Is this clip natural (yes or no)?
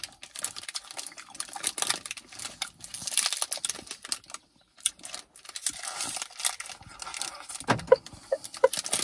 yes